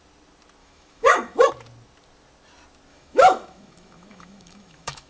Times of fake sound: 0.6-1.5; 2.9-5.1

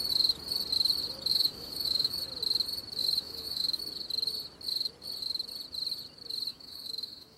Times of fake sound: 1.3-2.2; 3.0-3.8; 6.5-7.4